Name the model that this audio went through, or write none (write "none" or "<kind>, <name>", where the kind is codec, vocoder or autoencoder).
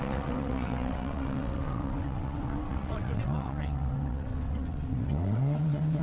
vocoder, WaveNeXt